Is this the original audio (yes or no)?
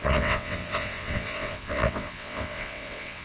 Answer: no